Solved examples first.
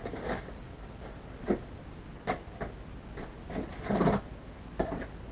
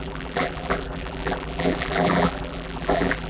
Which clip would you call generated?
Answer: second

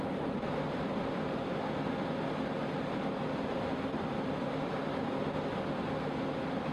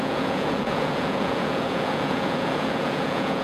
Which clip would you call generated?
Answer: second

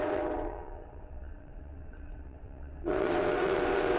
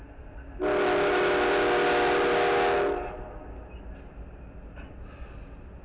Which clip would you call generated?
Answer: first